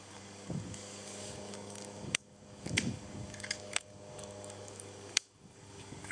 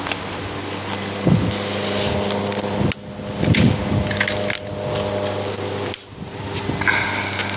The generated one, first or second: first